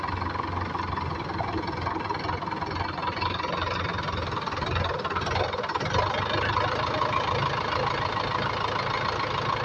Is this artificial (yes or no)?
no